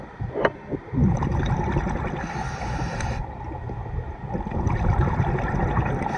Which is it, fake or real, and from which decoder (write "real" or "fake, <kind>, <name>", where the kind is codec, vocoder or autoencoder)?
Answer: real